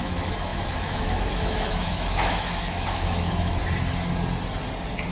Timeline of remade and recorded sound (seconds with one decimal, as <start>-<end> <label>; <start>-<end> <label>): 0.0-3.6 remade; 3.6-5.1 recorded